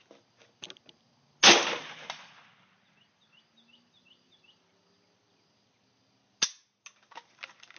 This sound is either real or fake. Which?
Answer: real